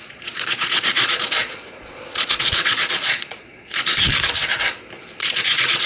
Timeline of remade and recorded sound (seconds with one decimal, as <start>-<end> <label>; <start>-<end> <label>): 0.0-4.1 remade; 4.1-5.2 recorded; 5.2-5.9 remade